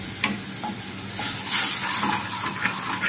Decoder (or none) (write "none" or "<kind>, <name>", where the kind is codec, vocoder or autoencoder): none